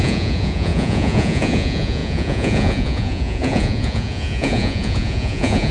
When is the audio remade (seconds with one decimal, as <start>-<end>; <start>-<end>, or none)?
0.0-5.7